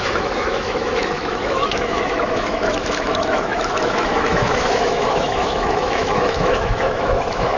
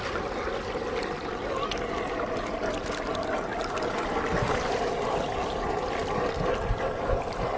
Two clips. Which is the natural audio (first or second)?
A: second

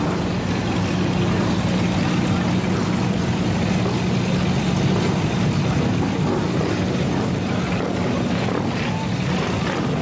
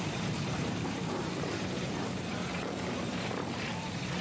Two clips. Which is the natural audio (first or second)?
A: first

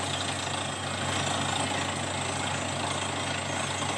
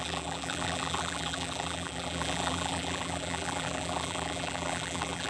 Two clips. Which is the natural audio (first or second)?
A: first